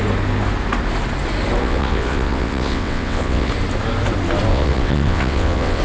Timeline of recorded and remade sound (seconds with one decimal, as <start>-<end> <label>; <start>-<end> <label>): 0.0-1.6 recorded; 1.6-3.5 remade; 3.5-4.5 recorded; 4.5-5.8 remade